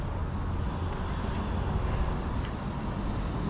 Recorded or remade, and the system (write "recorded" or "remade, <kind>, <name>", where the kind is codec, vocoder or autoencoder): recorded